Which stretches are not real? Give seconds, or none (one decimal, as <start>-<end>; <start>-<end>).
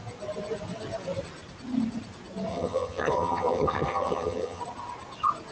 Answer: 2.5-4.6